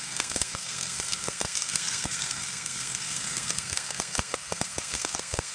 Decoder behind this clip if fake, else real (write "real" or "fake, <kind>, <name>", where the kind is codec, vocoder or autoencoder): fake, codec, SNAC